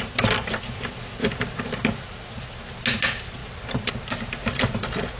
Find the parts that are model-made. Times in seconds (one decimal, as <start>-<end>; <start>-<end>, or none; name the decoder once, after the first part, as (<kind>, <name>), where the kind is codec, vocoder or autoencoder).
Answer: 3.4-3.9 (vocoder, BigVGAN v2); 4.4-5.2